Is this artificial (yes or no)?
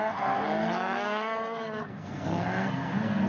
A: yes